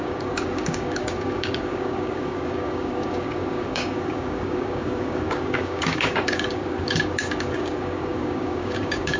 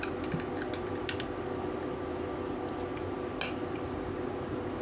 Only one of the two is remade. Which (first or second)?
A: first